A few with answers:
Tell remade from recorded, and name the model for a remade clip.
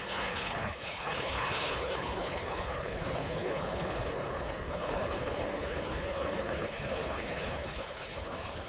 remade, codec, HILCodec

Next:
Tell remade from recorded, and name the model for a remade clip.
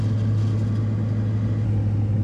recorded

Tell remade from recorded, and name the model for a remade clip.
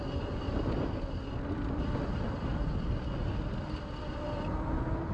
recorded